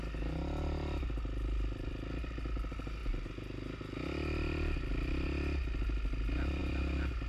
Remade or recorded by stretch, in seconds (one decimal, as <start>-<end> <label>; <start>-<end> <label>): 0.0-7.3 recorded